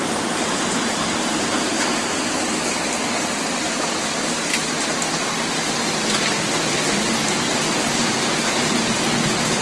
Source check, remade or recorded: recorded